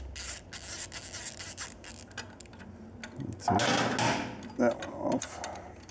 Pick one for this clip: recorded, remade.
recorded